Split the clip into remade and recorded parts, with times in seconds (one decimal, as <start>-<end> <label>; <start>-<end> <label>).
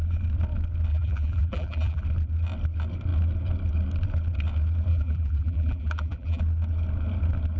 0.0-0.9 recorded; 0.9-2.0 remade; 2.0-4.9 recorded; 4.9-6.4 remade; 6.4-7.6 recorded